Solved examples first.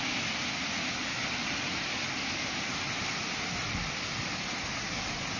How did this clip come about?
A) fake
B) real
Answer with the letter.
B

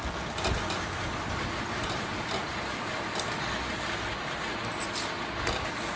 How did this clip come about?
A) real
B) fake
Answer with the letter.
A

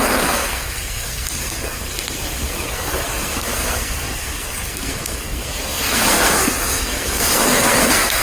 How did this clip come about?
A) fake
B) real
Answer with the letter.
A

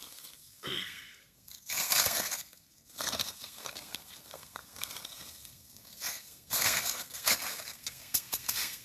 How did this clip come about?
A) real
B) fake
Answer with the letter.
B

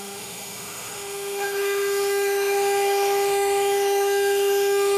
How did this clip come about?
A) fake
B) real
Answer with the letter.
A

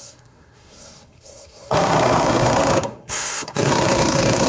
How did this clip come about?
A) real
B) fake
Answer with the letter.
B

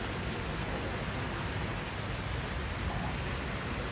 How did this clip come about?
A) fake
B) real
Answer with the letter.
B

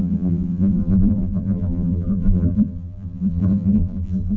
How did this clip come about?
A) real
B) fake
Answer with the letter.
B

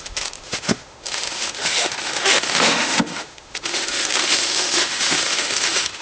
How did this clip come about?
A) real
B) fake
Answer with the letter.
B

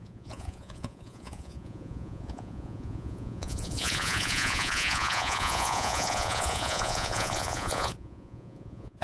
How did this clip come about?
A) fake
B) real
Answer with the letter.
A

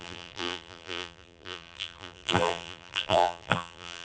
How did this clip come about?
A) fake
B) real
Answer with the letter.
A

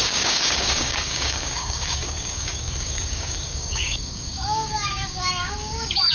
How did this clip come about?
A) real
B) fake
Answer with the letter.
B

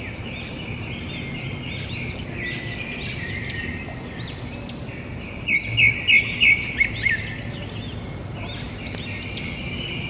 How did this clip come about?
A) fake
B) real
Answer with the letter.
B